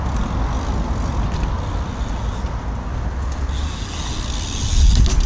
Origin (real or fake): real